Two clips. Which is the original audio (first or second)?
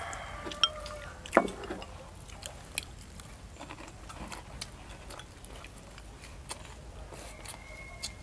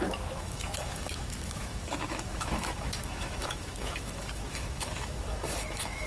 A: first